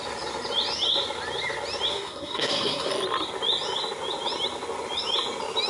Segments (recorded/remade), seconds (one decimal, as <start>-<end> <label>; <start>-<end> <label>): 0.0-1.9 recorded; 1.9-2.9 remade; 2.9-5.7 recorded